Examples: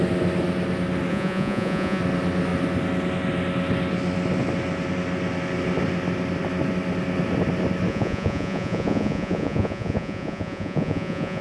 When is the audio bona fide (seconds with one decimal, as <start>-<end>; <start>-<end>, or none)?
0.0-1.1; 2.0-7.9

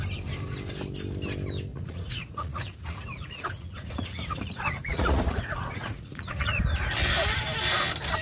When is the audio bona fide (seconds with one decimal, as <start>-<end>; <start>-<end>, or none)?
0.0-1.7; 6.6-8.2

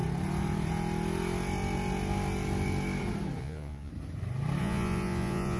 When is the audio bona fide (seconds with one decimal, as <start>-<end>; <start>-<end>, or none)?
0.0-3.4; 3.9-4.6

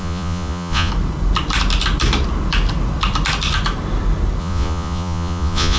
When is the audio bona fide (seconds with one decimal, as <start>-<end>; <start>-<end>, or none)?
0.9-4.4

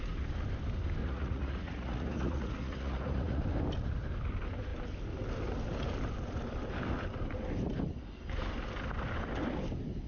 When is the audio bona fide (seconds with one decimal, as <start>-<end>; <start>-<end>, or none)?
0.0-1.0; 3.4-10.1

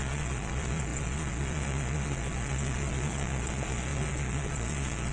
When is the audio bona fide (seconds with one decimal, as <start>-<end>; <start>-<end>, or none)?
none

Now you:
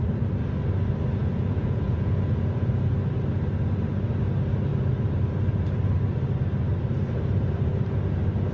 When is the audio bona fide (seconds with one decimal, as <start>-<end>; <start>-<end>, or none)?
0.0-1.2; 2.9-8.5

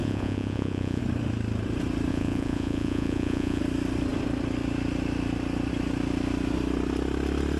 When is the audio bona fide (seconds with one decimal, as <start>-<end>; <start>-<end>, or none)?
1.0-2.1; 3.6-7.6